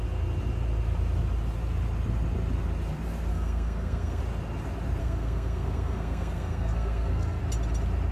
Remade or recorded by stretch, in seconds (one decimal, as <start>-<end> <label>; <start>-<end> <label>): 0.0-3.3 recorded; 3.3-4.2 remade; 4.2-5.0 recorded; 5.0-7.4 remade; 7.4-8.1 recorded